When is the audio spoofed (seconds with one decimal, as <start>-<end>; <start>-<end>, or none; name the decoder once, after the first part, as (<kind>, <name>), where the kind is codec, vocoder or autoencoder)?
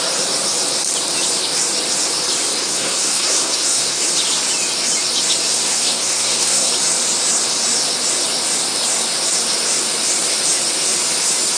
2.6-4.0 (codec, SNAC); 5.5-6.7